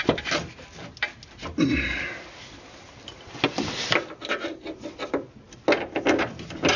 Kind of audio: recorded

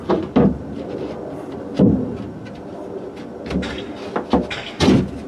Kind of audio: recorded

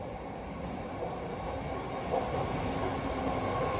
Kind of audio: recorded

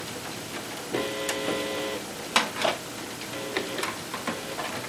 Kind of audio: recorded